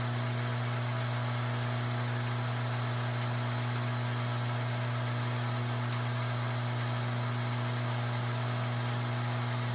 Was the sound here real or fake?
real